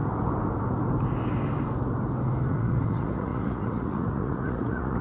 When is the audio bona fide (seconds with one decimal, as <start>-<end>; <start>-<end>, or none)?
0.0-2.5